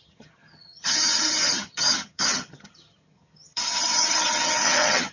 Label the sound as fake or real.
fake